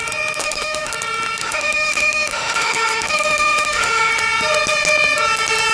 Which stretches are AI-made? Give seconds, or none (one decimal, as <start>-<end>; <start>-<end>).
0.4-0.9; 1.4-4.1